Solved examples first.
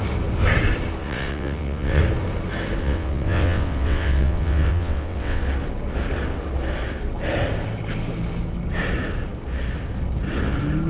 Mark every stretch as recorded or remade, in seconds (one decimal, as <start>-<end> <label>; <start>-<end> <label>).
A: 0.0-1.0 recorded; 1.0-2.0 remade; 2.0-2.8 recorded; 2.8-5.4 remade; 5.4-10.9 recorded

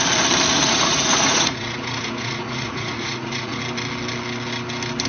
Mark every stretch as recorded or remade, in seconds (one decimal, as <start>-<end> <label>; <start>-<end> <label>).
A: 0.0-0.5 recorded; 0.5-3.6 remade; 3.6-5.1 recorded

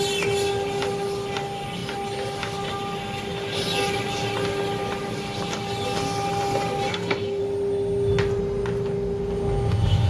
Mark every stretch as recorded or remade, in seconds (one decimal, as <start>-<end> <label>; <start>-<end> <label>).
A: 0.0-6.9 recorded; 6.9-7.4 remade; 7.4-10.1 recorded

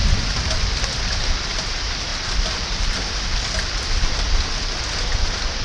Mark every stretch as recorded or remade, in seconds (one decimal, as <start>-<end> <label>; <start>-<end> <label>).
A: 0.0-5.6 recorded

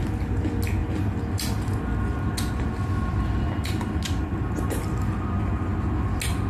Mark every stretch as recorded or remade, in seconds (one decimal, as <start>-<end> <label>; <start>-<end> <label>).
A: 0.0-6.5 recorded

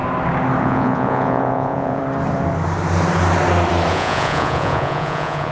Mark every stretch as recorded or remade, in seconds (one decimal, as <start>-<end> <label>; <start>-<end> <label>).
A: 0.0-0.6 recorded; 0.6-2.0 remade; 2.0-3.9 recorded; 3.9-5.5 remade

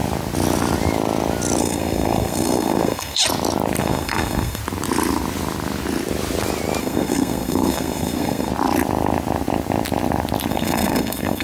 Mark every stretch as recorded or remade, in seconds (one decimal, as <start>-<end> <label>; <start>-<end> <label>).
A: 0.0-1.6 recorded; 1.6-3.2 remade; 3.2-3.8 recorded; 3.8-4.6 remade; 4.6-6.8 recorded; 6.8-8.5 remade; 8.5-10.5 recorded; 10.5-11.4 remade